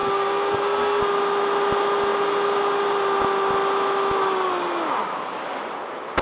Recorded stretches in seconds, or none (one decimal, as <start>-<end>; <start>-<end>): 1.0-6.2